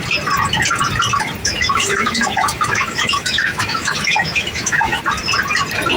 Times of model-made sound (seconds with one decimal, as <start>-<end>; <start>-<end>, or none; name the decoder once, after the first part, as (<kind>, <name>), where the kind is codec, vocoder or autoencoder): 1.4-5.0 (autoencoder, DAC-VAE)